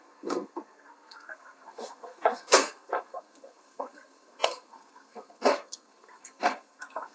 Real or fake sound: fake